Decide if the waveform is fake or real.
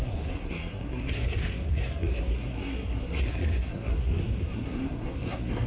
fake